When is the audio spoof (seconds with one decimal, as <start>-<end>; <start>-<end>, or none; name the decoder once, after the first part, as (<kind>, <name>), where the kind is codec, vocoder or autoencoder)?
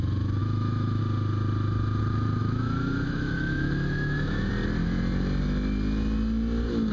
0.4-1.0 (autoencoder, DAC-VAE); 2.4-4.5